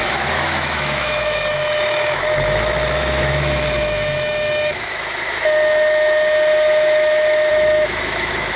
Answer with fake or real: fake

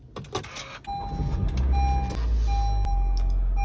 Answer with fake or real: real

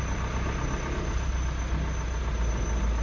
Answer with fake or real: real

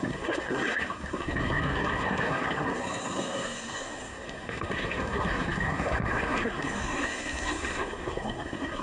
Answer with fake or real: fake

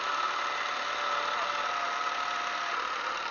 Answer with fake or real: real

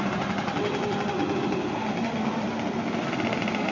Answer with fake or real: real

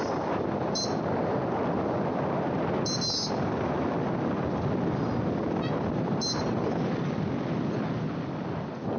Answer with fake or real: real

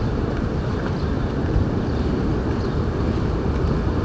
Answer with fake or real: fake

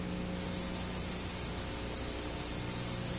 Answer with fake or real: real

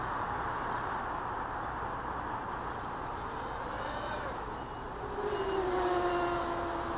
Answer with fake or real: real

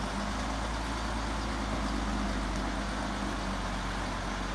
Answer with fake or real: real